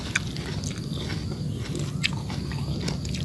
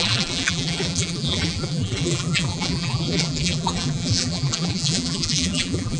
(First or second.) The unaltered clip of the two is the first